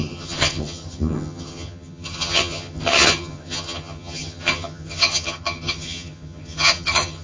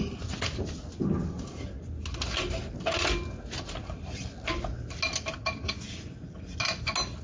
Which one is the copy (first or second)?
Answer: first